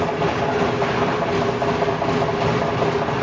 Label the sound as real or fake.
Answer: real